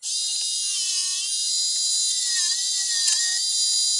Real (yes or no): yes